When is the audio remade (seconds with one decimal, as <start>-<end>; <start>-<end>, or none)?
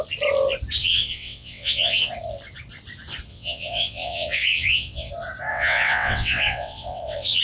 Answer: 0.8-2.1; 3.3-5.1; 5.5-7.4